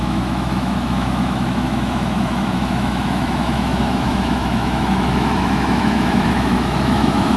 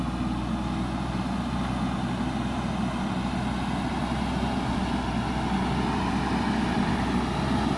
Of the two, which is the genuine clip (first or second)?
second